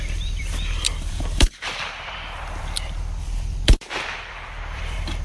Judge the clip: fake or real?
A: fake